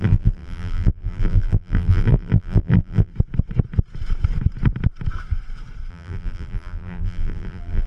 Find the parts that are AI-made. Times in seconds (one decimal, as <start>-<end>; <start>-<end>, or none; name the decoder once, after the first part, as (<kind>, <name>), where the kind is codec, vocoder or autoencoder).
0.0-3.1 (vocoder, BigVGAN v2); 5.9-7.9